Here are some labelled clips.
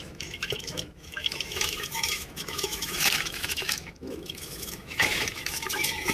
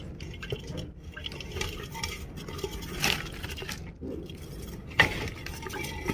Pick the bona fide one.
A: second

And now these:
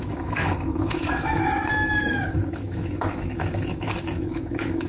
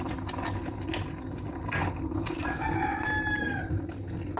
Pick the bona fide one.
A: second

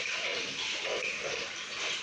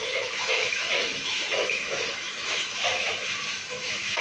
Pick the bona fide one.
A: first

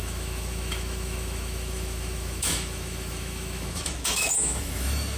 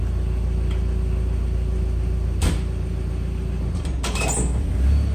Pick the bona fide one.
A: second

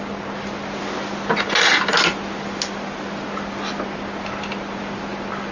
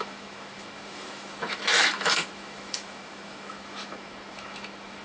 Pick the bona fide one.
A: first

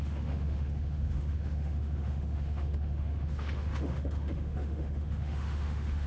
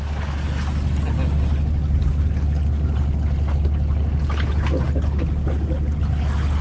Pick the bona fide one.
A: second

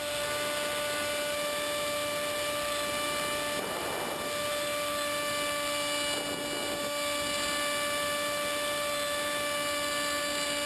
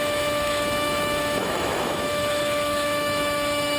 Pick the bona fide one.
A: first